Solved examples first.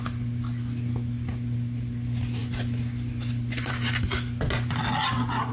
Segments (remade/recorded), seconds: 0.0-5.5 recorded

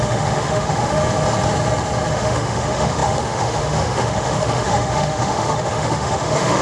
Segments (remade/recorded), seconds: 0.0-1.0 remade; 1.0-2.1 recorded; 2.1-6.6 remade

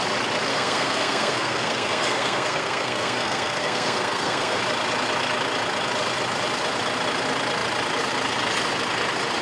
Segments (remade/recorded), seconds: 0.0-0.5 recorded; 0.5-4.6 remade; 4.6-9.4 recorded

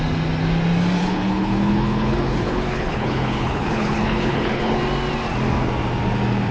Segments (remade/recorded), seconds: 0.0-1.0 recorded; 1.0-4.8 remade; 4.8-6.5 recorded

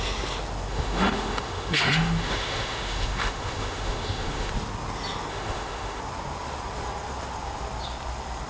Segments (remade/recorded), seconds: 0.0-0.7 recorded; 0.7-4.5 remade; 4.5-5.3 recorded; 5.3-6.0 remade; 6.0-8.5 recorded